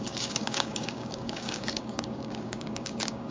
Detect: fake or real fake